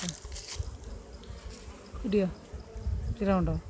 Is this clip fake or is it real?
real